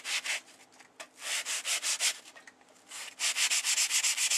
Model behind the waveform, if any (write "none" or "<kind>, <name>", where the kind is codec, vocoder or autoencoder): none